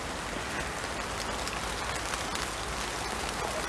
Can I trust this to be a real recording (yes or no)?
yes